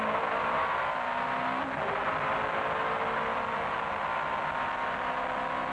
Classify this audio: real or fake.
real